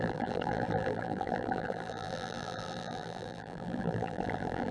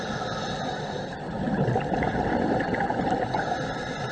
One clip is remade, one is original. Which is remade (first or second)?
first